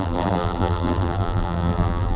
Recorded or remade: remade